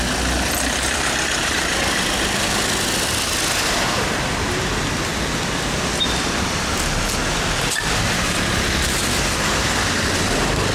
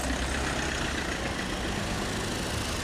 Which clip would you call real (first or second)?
second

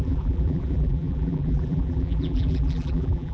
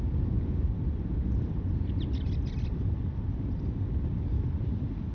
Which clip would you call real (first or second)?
second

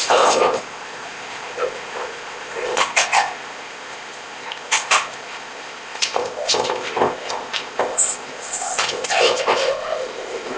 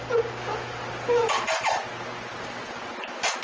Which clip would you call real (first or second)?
second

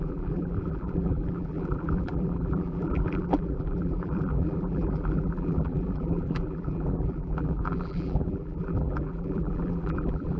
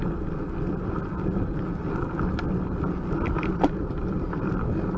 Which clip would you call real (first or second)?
second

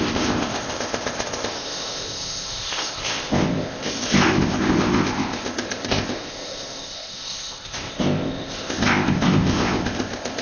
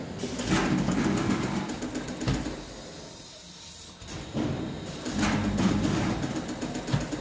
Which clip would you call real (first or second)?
second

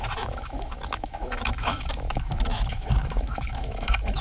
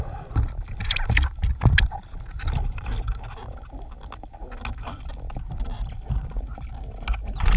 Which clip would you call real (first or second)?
second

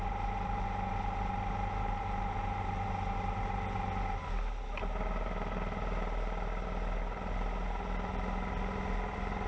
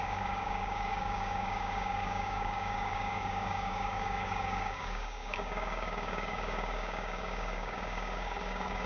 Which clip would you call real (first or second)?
first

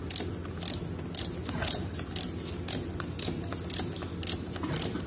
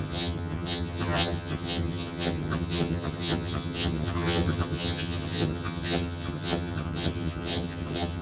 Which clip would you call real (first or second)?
first